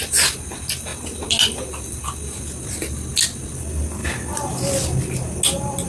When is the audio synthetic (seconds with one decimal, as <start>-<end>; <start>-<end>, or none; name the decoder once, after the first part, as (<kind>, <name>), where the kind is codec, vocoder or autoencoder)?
none